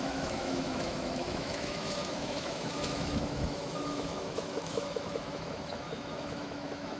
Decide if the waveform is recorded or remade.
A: remade